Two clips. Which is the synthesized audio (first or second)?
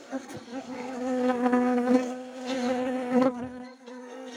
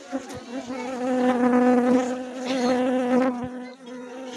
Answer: first